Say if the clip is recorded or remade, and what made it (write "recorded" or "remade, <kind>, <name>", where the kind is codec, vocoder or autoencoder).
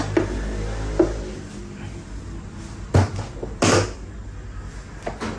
recorded